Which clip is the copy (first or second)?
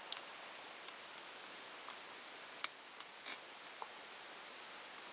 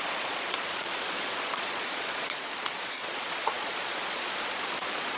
second